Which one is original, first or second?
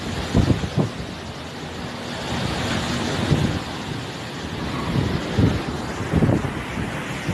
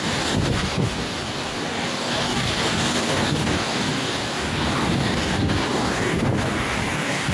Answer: first